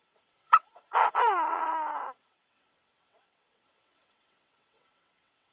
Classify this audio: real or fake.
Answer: fake